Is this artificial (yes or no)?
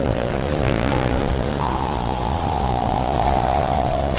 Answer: yes